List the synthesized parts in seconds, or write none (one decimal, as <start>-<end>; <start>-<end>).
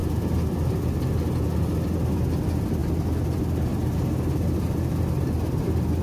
none